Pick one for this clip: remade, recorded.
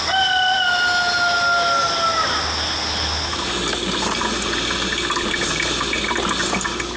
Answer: recorded